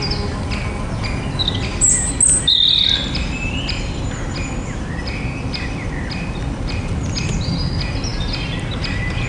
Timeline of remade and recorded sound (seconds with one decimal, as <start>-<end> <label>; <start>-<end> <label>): 0.0-9.3 recorded